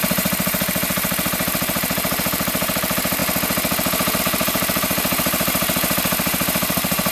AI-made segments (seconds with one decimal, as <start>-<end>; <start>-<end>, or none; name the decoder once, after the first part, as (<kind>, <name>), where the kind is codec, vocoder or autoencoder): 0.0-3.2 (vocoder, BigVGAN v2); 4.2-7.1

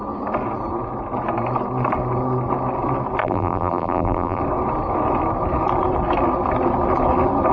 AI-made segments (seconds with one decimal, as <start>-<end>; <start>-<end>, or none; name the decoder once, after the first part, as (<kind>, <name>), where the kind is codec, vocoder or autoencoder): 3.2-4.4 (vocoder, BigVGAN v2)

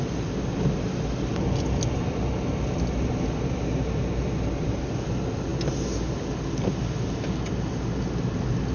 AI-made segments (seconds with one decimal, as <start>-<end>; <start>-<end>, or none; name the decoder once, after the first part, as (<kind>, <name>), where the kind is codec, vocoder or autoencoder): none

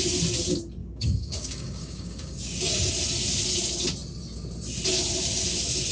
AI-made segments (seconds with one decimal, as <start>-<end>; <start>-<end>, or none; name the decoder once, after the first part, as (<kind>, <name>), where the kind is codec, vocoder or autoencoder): 0.8-2.9 (codec, DAC)

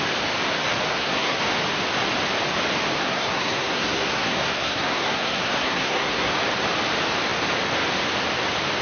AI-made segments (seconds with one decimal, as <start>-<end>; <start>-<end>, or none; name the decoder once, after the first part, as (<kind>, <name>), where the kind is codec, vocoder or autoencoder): 0.9-1.4 (codec, SNAC); 3.0-6.3

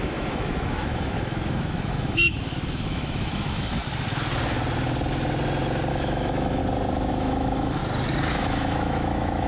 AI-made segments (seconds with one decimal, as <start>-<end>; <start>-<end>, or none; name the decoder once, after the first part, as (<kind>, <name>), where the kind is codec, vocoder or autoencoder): 0.0-3.8 (autoencoder, DAC-VAE); 5.9-6.6; 7.1-7.8; 8.3-9.5

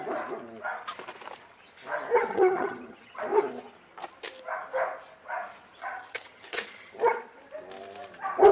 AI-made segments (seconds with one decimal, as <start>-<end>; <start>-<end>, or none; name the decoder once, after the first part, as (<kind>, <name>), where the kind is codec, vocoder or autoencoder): 2.3-3.2 (vocoder, HiFi-GAN); 5.8-6.9

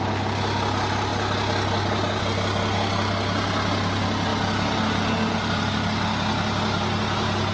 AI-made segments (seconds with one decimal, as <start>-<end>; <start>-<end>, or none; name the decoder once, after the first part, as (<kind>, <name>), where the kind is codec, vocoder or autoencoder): none